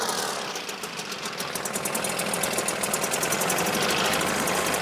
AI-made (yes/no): no